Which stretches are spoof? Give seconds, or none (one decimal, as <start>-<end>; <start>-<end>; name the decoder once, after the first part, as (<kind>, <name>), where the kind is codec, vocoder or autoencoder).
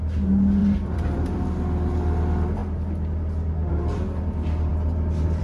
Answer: 0.6-1.4 (vocoder, BigVGAN v2); 4.7-5.4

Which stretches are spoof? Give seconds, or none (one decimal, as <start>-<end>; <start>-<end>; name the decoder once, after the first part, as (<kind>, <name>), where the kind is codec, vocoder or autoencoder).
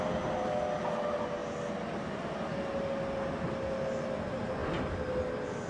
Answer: none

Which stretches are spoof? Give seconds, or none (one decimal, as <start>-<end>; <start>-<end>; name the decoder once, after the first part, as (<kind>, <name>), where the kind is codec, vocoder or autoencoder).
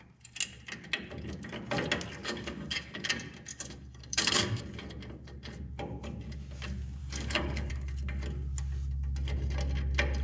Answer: 2.2-3.1 (codec, DAC); 3.5-4.6; 7.0-7.7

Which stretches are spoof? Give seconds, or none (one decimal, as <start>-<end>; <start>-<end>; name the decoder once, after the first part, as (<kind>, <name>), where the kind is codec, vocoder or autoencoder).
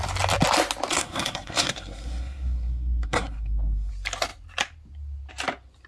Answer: 0.9-3.9 (codec, SNAC)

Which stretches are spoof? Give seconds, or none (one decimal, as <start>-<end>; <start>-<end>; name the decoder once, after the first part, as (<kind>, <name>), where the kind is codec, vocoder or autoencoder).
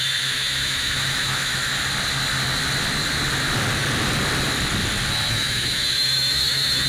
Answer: 0.0-1.7 (autoencoder, DAC-VAE); 5.3-6.9